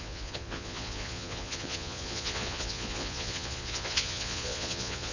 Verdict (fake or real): fake